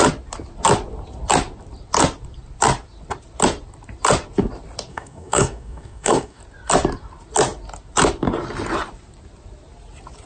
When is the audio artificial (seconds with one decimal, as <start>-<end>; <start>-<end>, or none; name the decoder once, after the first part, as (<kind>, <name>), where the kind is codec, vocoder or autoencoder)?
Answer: 4.9-6.4 (codec, DAC)